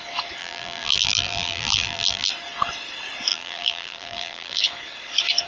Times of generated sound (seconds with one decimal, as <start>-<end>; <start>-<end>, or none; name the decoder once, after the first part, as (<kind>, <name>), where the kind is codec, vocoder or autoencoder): 0.4-2.3 (vocoder, BigVGAN v2); 3.3-4.6